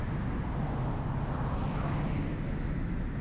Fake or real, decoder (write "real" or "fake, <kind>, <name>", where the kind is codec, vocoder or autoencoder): real